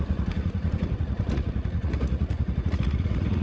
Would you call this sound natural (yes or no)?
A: no